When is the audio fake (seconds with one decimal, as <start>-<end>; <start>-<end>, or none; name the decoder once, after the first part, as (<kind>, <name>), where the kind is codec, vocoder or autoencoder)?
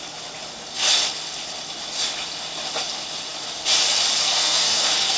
4.2-5.2 (codec, SNAC)